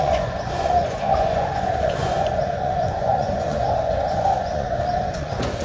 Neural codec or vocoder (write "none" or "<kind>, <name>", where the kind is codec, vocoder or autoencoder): vocoder, Vocos